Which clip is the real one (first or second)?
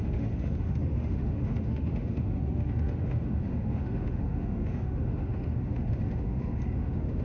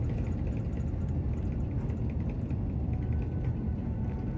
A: second